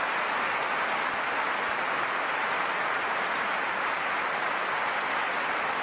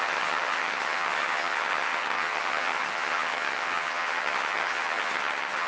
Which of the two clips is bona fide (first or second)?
first